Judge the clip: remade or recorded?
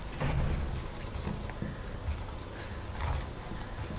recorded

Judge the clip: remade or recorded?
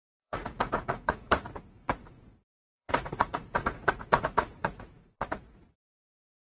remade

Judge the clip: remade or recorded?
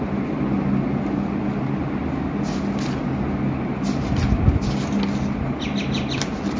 recorded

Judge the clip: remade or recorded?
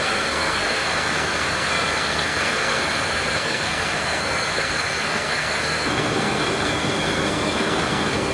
remade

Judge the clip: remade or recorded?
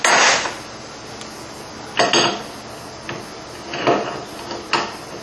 recorded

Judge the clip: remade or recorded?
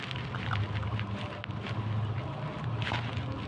recorded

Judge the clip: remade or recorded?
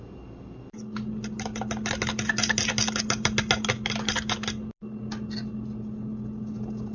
recorded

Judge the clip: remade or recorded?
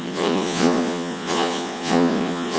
remade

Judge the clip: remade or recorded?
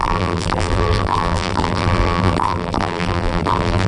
remade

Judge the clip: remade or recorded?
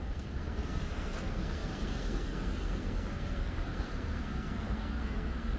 remade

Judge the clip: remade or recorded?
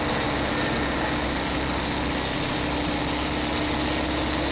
recorded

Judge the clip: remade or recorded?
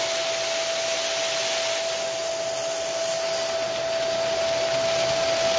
recorded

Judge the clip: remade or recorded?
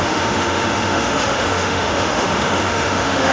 remade